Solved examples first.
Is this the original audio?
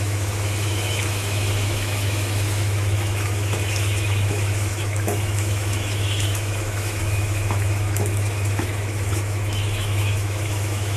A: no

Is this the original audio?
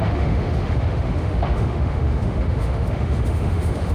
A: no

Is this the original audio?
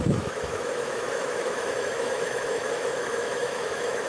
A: no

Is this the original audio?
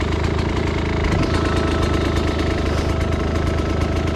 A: yes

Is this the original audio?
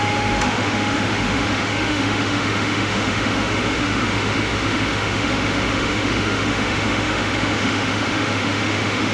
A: no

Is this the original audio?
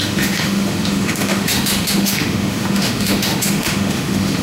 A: no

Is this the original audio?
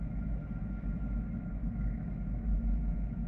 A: no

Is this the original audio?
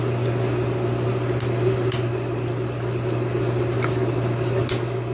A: yes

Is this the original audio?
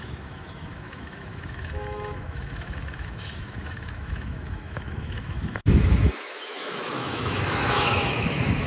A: no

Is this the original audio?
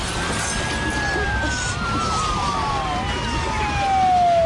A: yes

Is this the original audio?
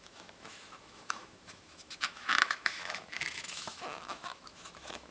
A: no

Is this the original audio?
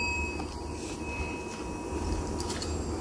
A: yes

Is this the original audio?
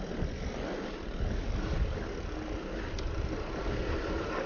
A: yes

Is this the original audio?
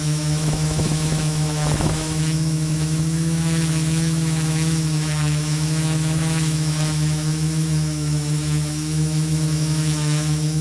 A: no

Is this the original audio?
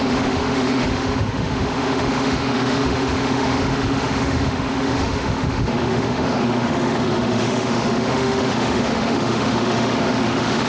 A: no